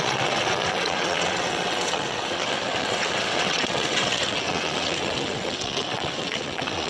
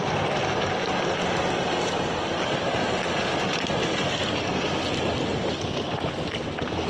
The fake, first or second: first